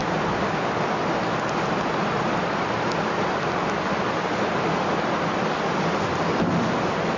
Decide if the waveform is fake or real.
real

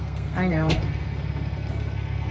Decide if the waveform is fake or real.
fake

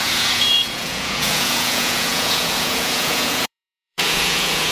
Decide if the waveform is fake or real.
fake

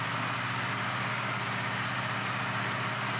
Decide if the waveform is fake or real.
real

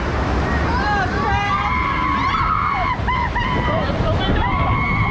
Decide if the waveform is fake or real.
fake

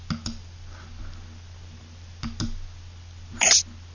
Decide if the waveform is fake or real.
real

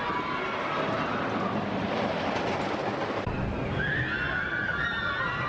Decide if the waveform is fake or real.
real